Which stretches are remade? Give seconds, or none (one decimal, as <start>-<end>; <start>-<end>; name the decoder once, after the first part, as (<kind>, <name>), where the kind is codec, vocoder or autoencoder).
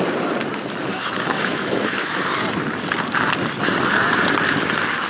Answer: 0.9-2.2 (autoencoder, DAC-VAE)